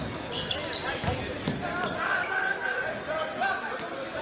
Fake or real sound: real